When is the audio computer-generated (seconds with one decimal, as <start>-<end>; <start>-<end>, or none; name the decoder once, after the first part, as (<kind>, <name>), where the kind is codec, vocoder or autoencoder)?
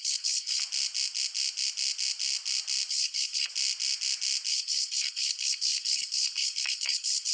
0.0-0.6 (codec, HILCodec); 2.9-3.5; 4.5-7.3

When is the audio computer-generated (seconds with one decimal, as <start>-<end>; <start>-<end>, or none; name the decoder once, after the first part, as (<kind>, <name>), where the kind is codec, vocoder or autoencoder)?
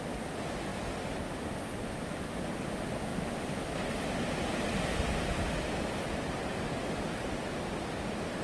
none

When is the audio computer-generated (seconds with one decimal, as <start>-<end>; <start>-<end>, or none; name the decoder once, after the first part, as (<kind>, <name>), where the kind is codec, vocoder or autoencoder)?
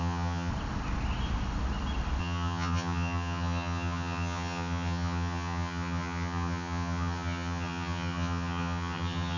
0.0-0.5 (vocoder, HiFi-GAN); 2.2-9.4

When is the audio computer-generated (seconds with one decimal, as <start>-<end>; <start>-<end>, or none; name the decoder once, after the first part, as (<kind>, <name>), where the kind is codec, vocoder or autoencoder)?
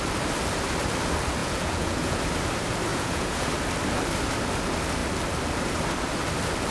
1.4-2.2 (vocoder, Vocos); 2.9-3.5